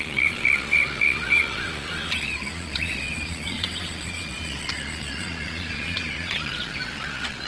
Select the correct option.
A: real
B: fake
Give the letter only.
B